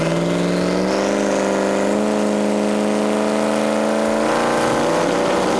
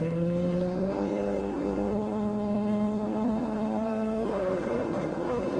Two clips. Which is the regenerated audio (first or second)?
second